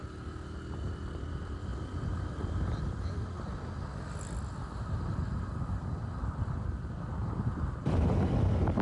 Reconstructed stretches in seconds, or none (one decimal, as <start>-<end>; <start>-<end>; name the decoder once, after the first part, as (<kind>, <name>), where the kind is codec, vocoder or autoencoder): 1.7-2.8 (vocoder, BigVGAN v2); 7.2-8.1